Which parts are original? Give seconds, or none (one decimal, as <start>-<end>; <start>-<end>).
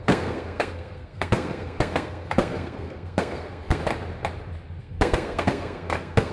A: 3.8-4.8